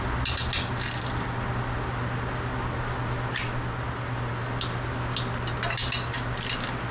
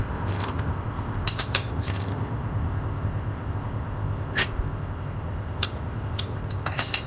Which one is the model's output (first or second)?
second